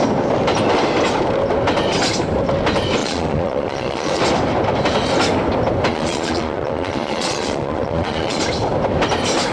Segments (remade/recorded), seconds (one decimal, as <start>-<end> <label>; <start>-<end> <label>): 0.0-3.0 recorded; 3.0-4.2 remade; 4.2-5.9 recorded; 5.9-8.4 remade; 8.4-9.5 recorded